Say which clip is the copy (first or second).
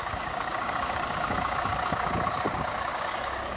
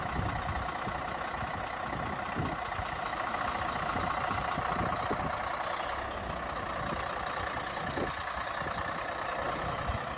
first